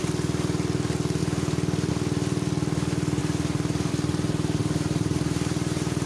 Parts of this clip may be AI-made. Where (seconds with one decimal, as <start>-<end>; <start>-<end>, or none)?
1.2-1.9; 4.6-6.1